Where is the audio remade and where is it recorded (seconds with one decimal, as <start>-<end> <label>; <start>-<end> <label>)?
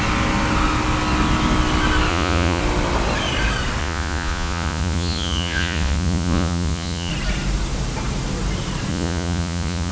0.0-2.1 recorded; 2.1-2.6 remade; 2.6-3.8 recorded; 3.8-7.1 remade; 7.1-8.9 recorded; 8.9-9.9 remade